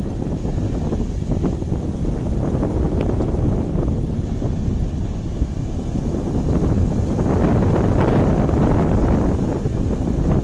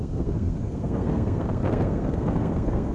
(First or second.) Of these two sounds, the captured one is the first